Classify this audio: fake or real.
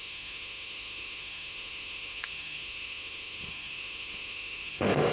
fake